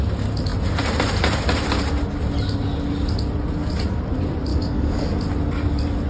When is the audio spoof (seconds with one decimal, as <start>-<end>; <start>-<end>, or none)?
4.5-5.2